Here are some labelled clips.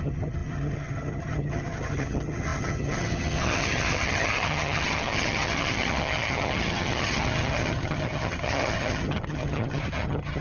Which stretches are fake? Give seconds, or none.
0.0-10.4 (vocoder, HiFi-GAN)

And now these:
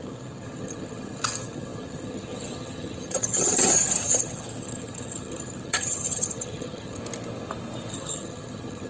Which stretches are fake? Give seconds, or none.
0.0-7.0 (vocoder, HiFi-GAN); 7.9-8.9

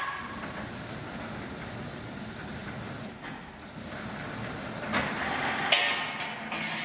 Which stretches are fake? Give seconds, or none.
none

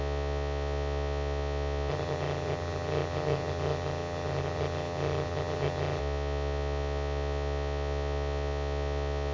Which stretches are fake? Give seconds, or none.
1.9-6.0 (vocoder, HiFi-GAN)

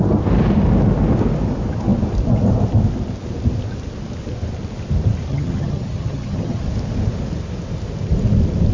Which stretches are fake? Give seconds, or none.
5.3-6.6 (vocoder, HiFi-GAN)

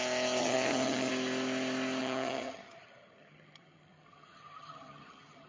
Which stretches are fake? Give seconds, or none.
0.4-1.1 (vocoder, HiFi-GAN); 2.0-5.5

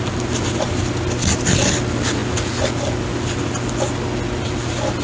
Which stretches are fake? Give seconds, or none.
none

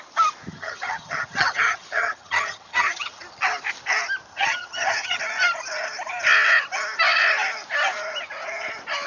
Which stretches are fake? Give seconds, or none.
0.5-3.2 (vocoder, HiFi-GAN); 4.3-5.2